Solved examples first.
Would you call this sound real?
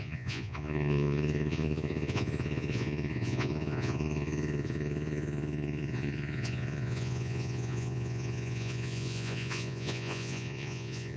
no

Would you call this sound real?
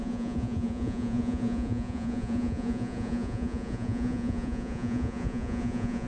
no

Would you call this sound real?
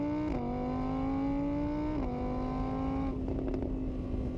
yes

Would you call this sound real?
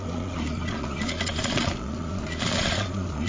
no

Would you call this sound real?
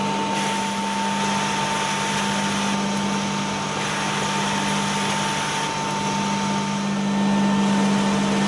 yes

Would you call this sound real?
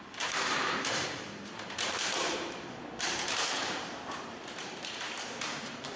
no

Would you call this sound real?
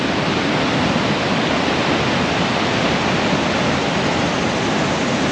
yes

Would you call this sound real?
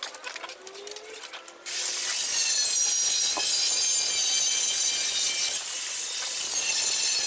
yes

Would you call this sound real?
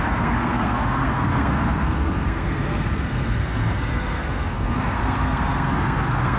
no